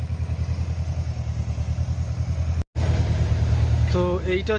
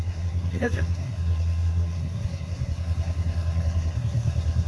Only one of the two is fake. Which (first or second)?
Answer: second